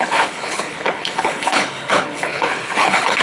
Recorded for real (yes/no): no